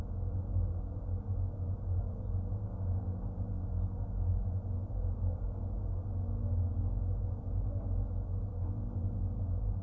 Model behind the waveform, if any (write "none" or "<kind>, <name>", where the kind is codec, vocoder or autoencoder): none